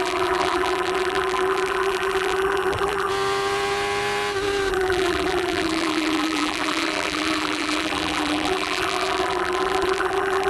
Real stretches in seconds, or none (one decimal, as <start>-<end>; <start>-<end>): 3.1-4.7